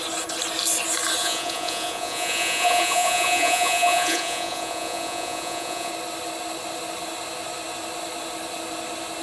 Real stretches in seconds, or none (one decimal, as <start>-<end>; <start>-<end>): 0.0-1.2; 5.9-9.2

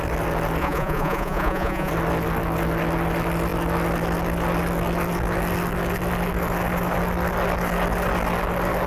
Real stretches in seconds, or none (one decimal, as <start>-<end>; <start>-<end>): 0.0-0.6; 1.9-8.9

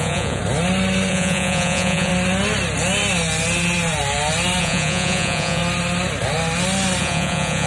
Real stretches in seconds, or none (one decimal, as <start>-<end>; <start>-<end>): 0.4-1.1; 2.1-4.6; 5.6-7.0

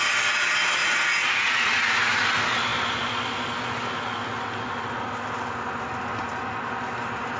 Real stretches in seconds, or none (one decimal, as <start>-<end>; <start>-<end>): 0.0-0.8; 2.3-7.4

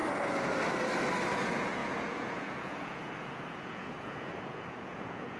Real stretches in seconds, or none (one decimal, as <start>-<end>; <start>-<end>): 0.0-1.3

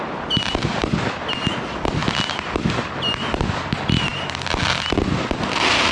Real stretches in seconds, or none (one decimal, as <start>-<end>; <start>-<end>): 0.0-5.9

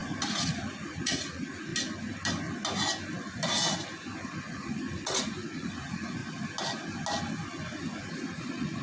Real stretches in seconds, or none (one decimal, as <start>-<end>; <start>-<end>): 1.7-4.4; 6.2-8.0